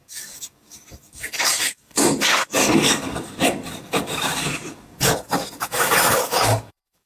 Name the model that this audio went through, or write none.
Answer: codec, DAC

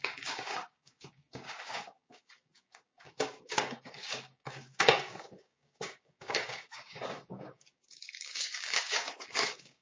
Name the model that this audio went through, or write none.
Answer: codec, DAC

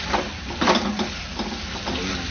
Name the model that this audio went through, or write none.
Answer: none